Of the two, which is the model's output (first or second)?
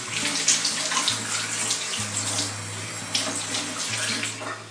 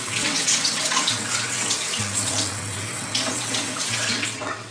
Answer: second